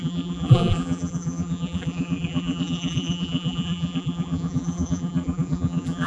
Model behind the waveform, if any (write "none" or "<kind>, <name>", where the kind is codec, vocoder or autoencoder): vocoder, BigVGAN v2